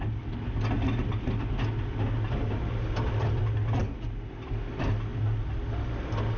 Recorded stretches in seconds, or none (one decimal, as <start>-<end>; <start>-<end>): 0.0-6.4